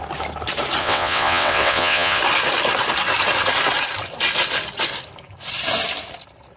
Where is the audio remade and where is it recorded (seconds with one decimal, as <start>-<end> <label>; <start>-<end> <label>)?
0.0-0.8 recorded; 0.8-2.2 remade; 2.2-6.6 recorded